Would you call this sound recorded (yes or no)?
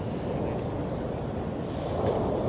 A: yes